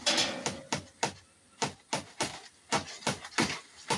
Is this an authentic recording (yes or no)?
yes